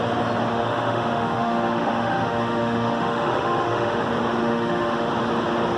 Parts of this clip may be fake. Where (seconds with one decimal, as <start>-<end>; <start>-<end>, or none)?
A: 0.5-4.0; 4.4-5.1